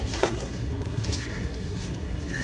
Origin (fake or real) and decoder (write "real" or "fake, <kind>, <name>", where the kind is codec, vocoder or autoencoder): fake, codec, SNAC